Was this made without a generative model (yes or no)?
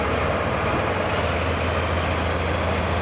yes